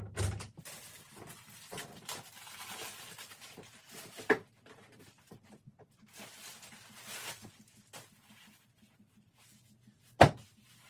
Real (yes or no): yes